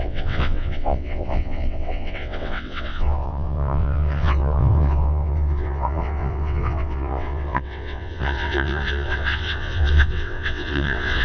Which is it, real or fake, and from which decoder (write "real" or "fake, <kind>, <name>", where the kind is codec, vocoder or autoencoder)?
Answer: fake, vocoder, WaveNeXt